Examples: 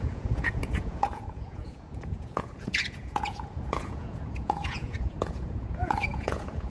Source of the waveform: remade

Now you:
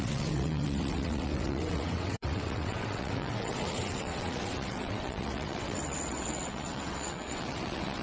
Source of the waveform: remade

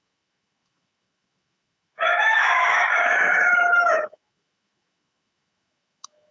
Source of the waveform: remade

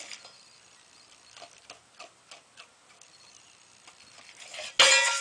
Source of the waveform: recorded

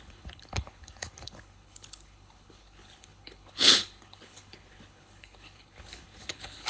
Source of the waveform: remade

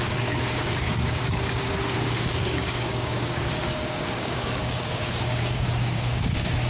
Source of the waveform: remade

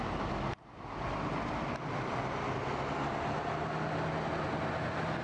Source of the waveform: recorded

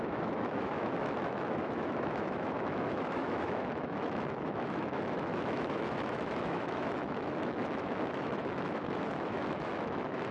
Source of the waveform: remade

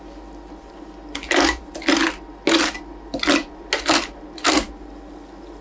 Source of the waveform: recorded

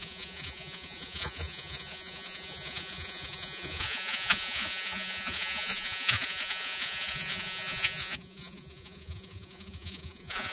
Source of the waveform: remade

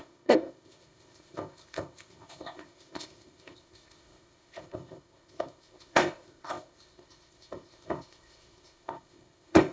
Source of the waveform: remade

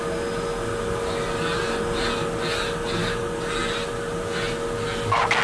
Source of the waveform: recorded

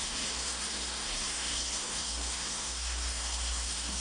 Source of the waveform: remade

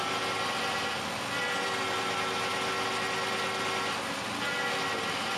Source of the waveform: recorded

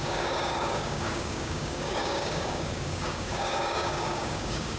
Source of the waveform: remade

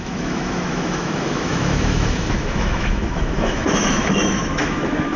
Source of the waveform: remade